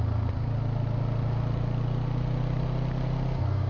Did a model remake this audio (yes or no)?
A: no